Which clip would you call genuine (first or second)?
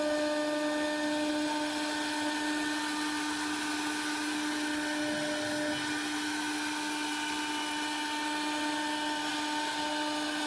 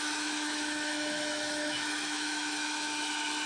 first